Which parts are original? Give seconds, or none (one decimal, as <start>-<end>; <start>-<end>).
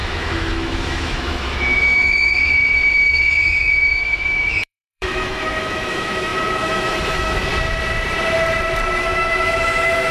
7.5-9.0